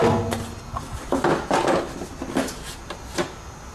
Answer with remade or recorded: recorded